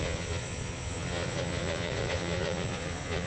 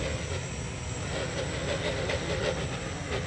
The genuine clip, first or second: second